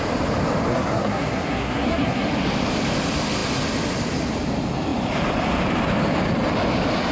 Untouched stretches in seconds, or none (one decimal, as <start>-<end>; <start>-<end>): 0.0-0.7; 2.3-7.1